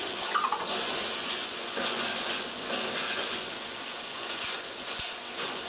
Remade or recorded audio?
remade